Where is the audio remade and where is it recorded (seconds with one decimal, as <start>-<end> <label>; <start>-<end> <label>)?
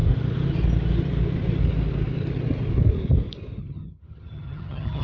0.0-3.6 recorded; 3.6-5.0 remade